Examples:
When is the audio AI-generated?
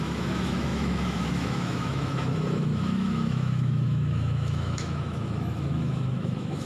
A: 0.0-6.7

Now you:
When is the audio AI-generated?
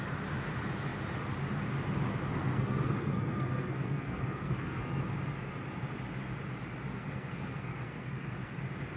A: 2.4-5.0; 6.9-8.6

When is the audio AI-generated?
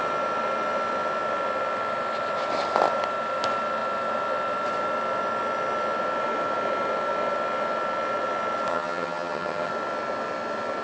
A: 8.7-9.7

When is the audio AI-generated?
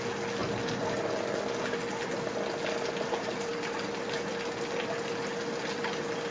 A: none